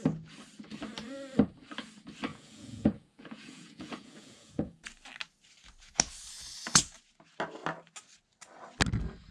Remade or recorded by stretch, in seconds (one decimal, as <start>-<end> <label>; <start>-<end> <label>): 0.0-2.3 recorded; 2.3-4.9 remade; 4.9-9.3 recorded